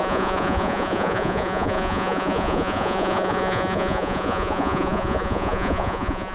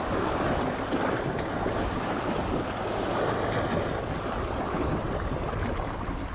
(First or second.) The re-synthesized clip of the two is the first